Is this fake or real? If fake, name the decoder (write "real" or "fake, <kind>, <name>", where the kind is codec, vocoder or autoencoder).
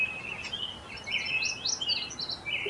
real